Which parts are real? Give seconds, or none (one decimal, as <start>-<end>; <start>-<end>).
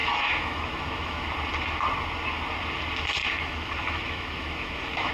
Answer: 1.3-3.2